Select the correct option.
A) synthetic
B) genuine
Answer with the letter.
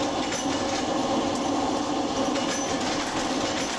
B